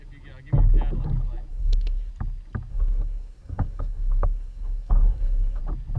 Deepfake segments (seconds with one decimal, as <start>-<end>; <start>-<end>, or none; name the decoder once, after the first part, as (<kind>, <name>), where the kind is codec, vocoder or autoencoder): 1.5-2.1 (codec, SNAC); 2.7-5.6